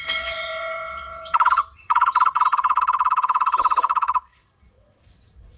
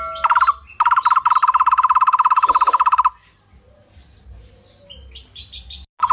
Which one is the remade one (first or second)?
first